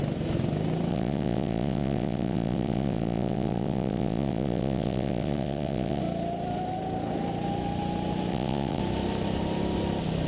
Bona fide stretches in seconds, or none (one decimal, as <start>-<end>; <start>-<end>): 0.0-0.9; 6.0-8.3; 8.8-10.3